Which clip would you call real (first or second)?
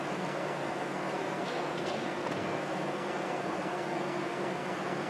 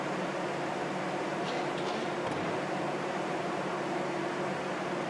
second